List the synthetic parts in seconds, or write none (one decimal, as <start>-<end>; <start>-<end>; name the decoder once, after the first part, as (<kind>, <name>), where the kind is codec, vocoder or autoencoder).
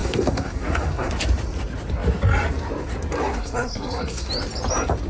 0.0-1.1 (codec, SNAC); 3.3-4.3